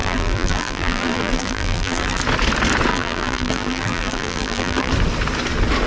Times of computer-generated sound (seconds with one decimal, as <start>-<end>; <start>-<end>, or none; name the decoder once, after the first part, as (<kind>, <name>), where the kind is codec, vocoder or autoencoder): 0.0-2.2 (vocoder, BigVGAN v2); 2.9-4.9